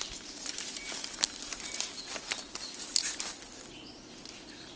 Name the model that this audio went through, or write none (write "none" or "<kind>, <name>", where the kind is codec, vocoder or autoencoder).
none